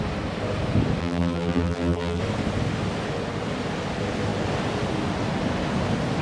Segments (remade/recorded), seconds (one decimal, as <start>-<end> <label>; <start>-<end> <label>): 0.0-1.0 recorded; 1.0-2.2 remade; 2.2-6.2 recorded